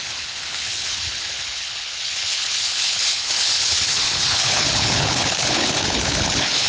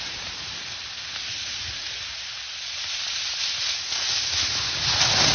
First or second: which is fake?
first